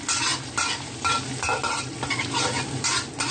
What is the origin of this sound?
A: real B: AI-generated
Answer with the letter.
A